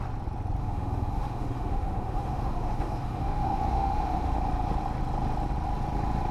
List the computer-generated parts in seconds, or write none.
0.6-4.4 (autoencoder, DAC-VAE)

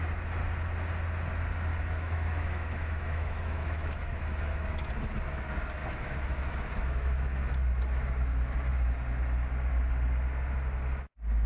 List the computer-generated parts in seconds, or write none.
1.7-4.9 (autoencoder, DAC-VAE); 5.8-7.5